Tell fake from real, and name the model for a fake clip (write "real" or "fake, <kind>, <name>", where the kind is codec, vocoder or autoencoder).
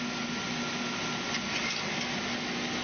real